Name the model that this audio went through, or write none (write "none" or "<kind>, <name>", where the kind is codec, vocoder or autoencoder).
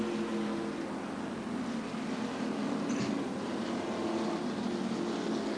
none